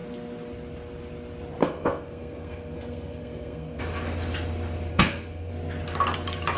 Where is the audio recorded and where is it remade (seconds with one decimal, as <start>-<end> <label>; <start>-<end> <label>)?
0.0-1.6 recorded; 1.6-3.8 remade; 3.8-4.9 recorded; 4.9-5.5 remade; 5.5-6.6 recorded